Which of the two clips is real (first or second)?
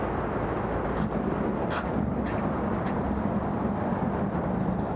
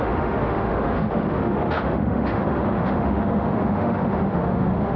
first